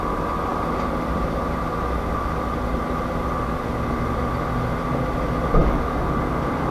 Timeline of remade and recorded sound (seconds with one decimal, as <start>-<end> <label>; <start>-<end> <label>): 0.0-6.7 recorded